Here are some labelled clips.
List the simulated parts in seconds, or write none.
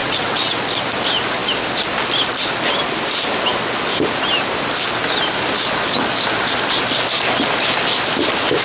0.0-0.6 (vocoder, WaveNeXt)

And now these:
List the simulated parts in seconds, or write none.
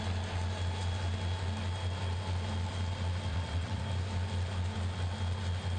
3.3-3.8 (vocoder, WaveNeXt)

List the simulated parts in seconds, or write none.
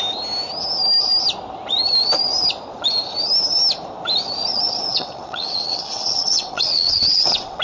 4.9-7.6 (vocoder, WaveNeXt)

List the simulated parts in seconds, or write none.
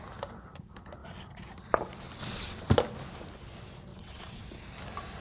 2.2-2.7 (vocoder, WaveNeXt); 3.9-4.4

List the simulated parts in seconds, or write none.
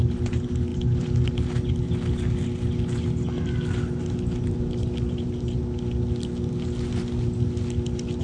none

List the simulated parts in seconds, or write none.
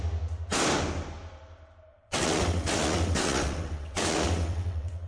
1.9-5.1 (vocoder, WaveNeXt)